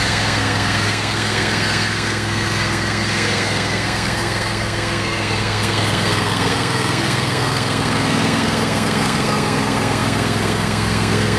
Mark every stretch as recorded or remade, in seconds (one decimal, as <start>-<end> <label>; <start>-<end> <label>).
0.0-11.4 remade